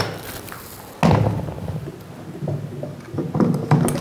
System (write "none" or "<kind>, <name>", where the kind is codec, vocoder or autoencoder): none